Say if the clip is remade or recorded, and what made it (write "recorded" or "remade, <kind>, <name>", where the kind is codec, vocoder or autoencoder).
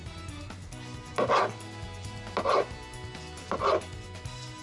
recorded